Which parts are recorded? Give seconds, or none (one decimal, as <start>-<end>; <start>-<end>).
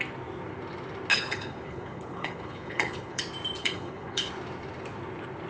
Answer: 0.0-1.1; 3.2-3.6; 4.3-5.5